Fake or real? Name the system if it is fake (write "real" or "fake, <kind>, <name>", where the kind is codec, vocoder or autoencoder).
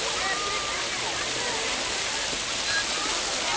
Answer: real